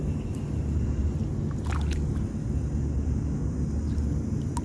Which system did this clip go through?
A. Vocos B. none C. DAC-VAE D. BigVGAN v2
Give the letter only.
B